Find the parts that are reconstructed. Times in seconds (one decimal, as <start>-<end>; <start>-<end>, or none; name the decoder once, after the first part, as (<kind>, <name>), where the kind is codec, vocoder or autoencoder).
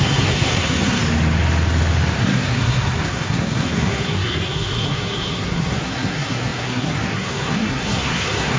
0.0-1.0 (codec, SNAC); 2.2-8.6